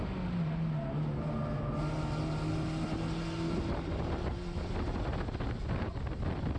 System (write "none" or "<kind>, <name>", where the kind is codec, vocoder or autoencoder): none